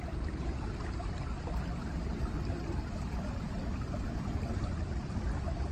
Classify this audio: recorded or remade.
recorded